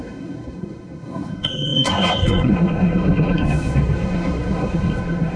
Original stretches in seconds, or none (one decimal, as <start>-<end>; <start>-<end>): none